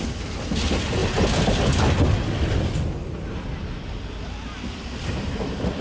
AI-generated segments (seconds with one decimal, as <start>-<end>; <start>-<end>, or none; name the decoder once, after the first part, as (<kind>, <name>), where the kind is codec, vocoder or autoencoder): none